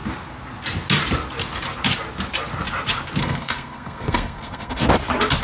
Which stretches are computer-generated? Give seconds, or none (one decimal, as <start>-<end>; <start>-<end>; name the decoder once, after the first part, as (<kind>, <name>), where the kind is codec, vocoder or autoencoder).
3.2-4.8 (codec, SNAC)

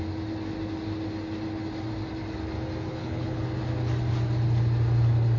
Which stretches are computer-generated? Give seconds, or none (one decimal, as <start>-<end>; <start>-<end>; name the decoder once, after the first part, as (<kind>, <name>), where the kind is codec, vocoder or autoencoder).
2.9-3.4 (codec, HILCodec)

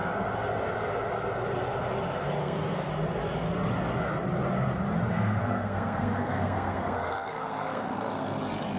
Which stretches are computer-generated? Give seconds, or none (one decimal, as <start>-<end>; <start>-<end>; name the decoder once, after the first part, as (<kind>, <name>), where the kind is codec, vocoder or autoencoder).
2.4-2.9 (codec, SNAC); 5.1-8.4

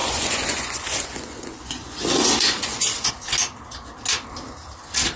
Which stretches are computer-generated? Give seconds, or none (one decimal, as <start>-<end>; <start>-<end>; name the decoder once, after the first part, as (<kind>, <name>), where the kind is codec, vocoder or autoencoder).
0.0-3.1 (vocoder, Vocos)

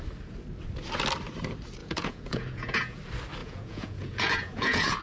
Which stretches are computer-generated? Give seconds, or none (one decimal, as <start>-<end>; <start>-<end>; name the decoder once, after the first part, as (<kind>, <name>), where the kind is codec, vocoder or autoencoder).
1.8-3.0 (vocoder, Vocos); 3.4-5.0